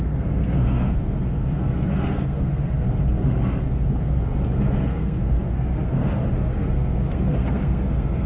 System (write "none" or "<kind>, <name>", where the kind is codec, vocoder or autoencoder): codec, SNAC